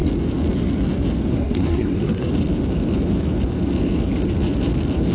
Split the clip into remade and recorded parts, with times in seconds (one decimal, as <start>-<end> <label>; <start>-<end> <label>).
0.0-1.3 recorded; 1.3-2.3 remade; 2.3-5.1 recorded